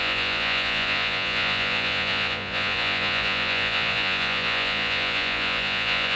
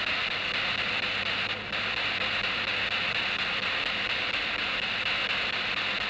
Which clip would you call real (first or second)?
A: second